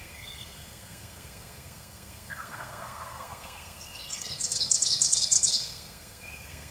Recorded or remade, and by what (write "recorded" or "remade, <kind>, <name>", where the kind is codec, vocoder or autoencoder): remade, codec, SNAC